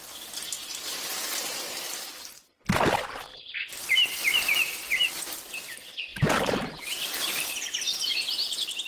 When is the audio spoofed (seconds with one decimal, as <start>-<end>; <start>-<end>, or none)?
1.4-2.2; 3.3-5.2; 6.1-7.6